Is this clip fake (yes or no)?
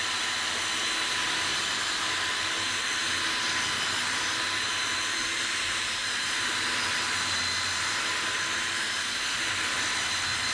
no